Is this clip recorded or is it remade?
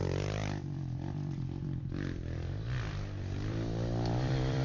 remade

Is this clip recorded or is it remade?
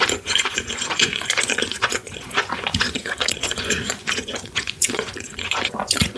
remade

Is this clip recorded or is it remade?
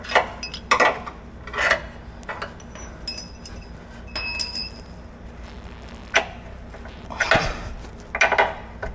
recorded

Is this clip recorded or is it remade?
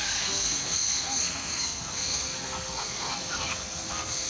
remade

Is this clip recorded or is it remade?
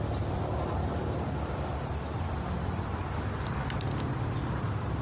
recorded